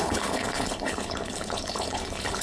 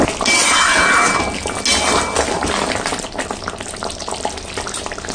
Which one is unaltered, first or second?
second